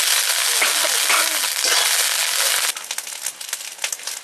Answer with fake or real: real